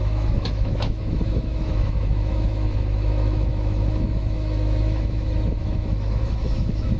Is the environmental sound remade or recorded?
remade